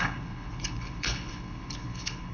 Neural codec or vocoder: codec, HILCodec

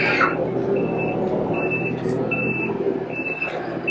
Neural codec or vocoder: none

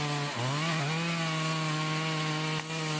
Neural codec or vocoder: none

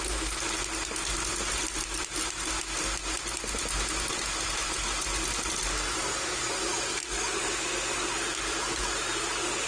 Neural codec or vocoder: none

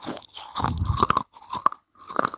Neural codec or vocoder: codec, HILCodec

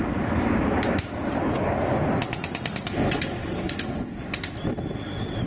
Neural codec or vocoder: none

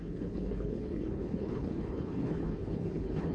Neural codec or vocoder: codec, HILCodec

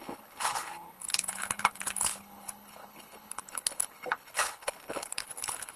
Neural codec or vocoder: codec, HILCodec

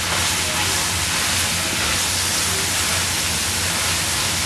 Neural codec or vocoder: none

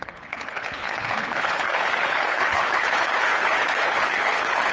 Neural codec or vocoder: codec, HILCodec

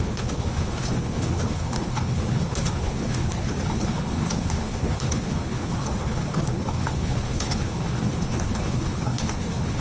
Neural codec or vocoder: codec, HILCodec